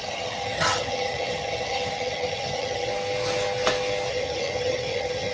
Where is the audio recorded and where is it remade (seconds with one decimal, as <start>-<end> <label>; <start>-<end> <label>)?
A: 0.0-2.9 remade; 2.9-4.1 recorded; 4.1-5.3 remade

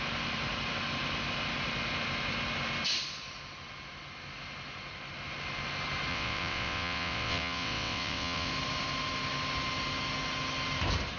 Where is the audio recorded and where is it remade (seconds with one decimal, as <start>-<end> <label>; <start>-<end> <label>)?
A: 0.0-6.1 recorded; 6.1-8.5 remade; 8.5-11.2 recorded

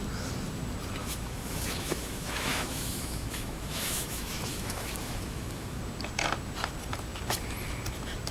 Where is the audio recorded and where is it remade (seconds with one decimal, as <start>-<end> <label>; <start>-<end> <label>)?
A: 0.0-1.0 recorded; 1.0-5.8 remade; 5.8-8.3 recorded

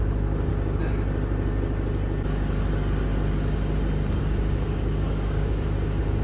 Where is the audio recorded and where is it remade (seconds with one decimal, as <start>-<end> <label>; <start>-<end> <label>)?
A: 0.0-0.5 remade; 0.5-4.2 recorded; 4.2-6.2 remade

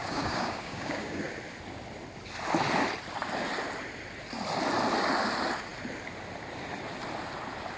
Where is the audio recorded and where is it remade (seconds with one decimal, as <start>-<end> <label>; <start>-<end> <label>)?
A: 0.0-1.2 remade; 1.2-7.8 recorded

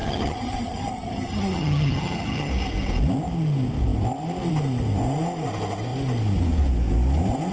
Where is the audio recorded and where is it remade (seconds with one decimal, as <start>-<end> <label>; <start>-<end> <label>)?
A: 0.0-2.5 remade; 2.5-7.5 recorded